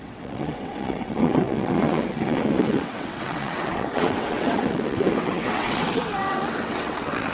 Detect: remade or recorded remade